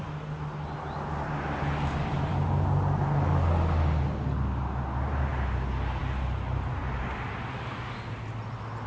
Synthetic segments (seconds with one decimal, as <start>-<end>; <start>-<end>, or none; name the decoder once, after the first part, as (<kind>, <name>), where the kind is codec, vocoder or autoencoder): none